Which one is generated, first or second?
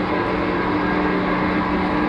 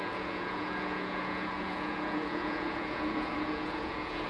second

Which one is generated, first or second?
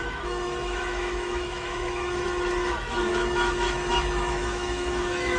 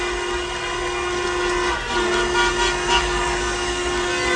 first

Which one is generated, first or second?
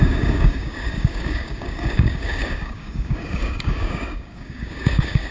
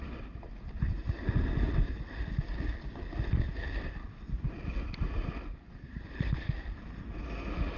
first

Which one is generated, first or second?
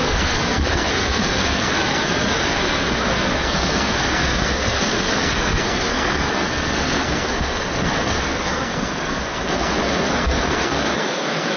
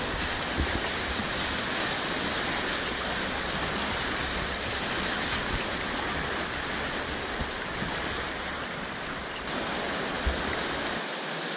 first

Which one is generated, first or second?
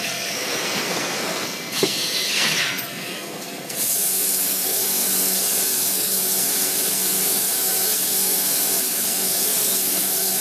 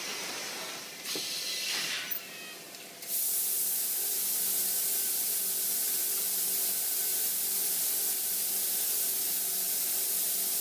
first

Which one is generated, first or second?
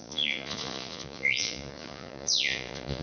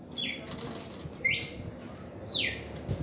first